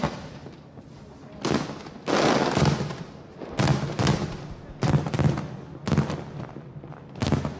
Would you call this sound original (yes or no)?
yes